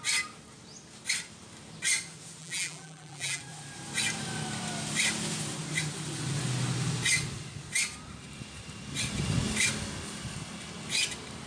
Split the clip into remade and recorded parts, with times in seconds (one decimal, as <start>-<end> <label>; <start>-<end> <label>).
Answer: 0.0-2.4 recorded; 2.4-3.4 remade; 3.4-11.5 recorded